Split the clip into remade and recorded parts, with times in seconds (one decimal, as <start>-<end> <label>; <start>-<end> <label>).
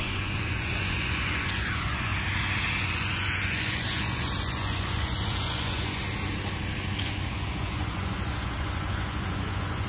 0.0-2.1 remade; 2.1-2.8 recorded; 2.8-6.0 remade; 6.0-7.0 recorded; 7.0-9.9 remade